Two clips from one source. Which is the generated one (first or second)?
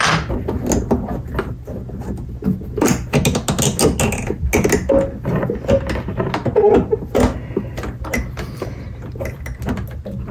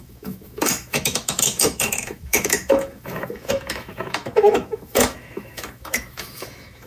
second